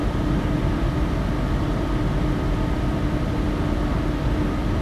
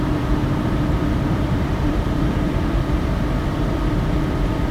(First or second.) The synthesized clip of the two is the second